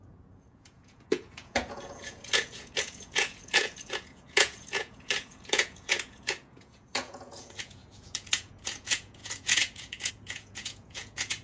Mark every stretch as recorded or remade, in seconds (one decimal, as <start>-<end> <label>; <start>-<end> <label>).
0.0-11.4 remade